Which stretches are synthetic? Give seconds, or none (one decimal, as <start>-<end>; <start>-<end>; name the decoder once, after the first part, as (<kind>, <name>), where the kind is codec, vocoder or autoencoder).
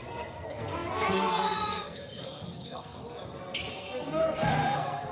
0.0-3.0 (codec, SNAC); 3.7-5.1